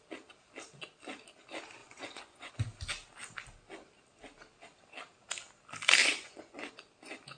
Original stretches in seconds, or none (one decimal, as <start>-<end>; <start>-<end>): 0.0-1.8; 2.5-6.0; 6.7-7.4